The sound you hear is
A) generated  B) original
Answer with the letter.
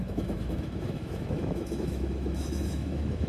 A